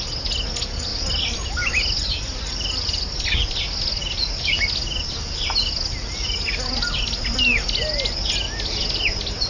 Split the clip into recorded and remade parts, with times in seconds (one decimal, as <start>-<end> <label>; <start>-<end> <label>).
0.0-9.5 recorded